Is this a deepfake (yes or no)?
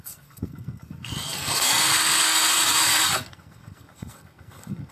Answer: yes